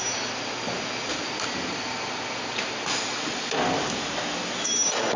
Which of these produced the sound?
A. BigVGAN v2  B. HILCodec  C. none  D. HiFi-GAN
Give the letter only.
C